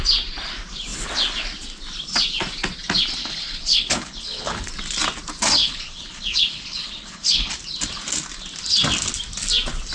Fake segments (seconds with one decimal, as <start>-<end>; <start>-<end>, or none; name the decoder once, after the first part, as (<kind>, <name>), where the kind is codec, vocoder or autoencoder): 3.2-4.7 (codec, HILCodec); 5.6-7.5